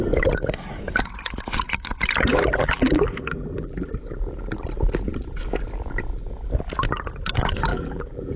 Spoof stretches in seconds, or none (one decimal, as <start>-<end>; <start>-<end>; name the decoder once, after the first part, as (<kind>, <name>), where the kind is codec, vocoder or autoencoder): 2.3-3.9 (vocoder, BigVGAN v2); 7.7-8.4